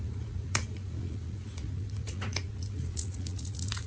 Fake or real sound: fake